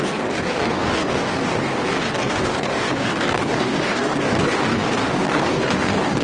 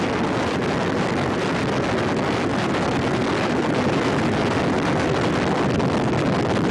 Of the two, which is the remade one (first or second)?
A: first